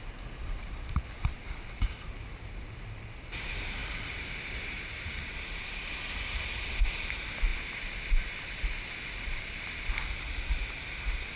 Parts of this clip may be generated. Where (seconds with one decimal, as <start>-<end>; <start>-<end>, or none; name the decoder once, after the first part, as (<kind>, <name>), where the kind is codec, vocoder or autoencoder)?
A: none

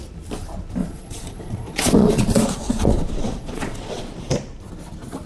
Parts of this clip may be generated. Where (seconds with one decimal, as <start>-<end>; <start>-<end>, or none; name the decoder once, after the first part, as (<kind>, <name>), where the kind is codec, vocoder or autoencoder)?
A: 0.8-4.0 (vocoder, Vocos)

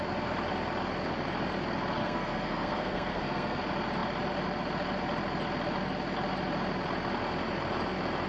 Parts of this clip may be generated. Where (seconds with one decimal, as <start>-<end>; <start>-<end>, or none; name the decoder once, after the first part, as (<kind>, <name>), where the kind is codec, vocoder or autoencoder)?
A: 2.0-3.6 (codec, SNAC)

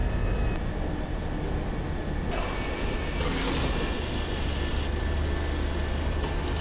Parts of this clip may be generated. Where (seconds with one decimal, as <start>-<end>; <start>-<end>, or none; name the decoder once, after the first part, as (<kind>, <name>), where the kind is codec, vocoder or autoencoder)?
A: none

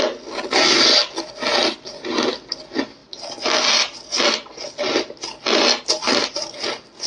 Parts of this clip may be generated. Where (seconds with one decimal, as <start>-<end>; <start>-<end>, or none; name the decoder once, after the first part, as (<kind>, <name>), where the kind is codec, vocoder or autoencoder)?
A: none